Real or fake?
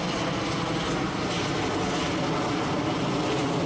real